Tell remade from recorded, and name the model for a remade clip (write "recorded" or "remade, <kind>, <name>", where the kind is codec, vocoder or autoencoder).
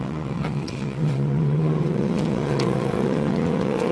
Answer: remade, vocoder, WaveNeXt